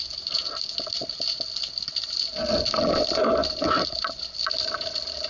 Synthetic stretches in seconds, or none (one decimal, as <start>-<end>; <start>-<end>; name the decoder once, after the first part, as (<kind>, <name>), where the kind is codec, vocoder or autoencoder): none